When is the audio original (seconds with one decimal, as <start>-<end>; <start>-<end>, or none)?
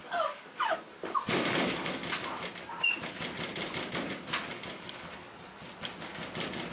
2.0-4.5; 5.5-6.7